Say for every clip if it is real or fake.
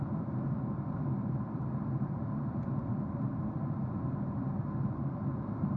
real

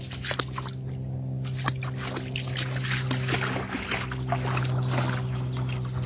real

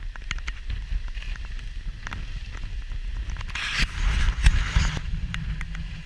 real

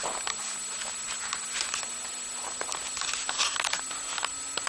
real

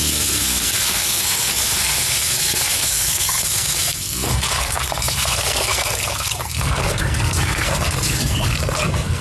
fake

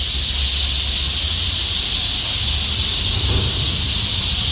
real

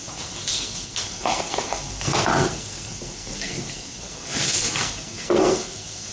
fake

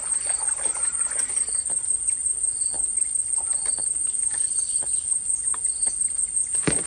real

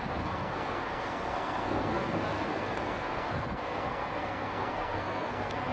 fake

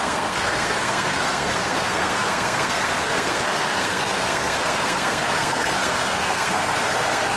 fake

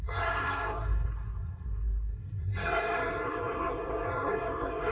fake